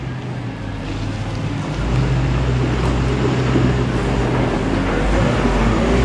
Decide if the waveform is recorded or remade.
recorded